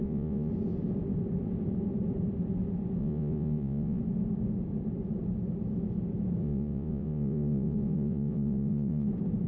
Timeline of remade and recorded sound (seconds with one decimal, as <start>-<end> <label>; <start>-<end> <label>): 0.0-0.5 remade; 0.5-3.0 recorded; 3.0-4.0 remade; 4.0-6.4 recorded; 6.4-9.1 remade; 9.1-9.5 recorded